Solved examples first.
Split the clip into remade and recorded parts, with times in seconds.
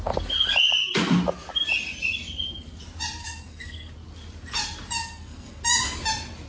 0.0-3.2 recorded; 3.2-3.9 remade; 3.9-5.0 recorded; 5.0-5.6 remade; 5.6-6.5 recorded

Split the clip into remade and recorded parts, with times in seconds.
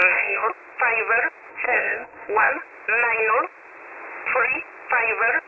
0.0-0.5 remade; 0.5-1.5 recorded; 1.5-2.5 remade; 2.5-5.5 recorded